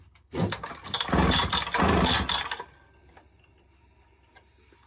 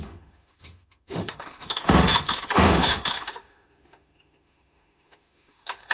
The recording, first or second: first